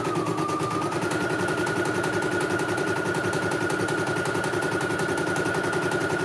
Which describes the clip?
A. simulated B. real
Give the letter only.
B